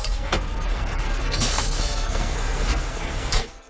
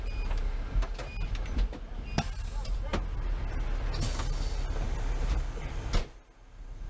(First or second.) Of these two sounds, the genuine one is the second